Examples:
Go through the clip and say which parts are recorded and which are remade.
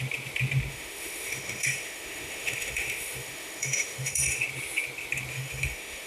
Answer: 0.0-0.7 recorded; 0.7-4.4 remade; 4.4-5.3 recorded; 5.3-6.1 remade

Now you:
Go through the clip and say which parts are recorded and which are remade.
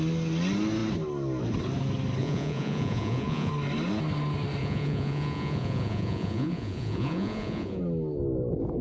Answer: 0.0-2.2 recorded; 2.2-3.5 remade; 3.5-4.6 recorded; 4.6-7.8 remade; 7.8-8.8 recorded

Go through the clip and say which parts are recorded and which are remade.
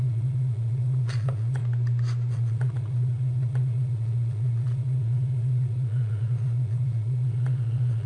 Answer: 0.0-1.6 remade; 1.6-2.3 recorded; 2.3-8.1 remade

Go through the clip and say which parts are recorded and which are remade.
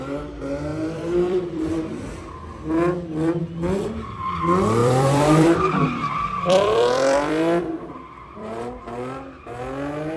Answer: 0.0-0.7 recorded; 0.7-1.7 remade; 1.7-4.8 recorded; 4.8-8.8 remade; 8.8-10.2 recorded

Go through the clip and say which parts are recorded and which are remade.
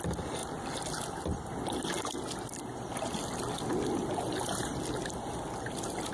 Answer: 0.0-6.1 recorded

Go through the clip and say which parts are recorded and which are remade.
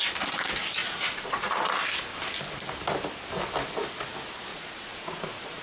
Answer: 0.0-0.8 recorded; 0.8-1.6 remade; 1.6-4.5 recorded; 4.5-5.6 remade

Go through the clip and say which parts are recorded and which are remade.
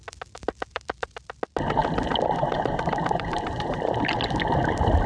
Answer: 0.0-0.7 recorded; 0.7-1.2 remade; 1.2-1.8 recorded; 1.8-3.9 remade; 3.9-5.1 recorded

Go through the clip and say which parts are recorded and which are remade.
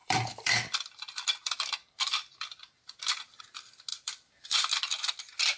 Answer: 0.0-3.4 remade; 3.4-3.9 recorded; 3.9-4.7 remade; 4.7-5.6 recorded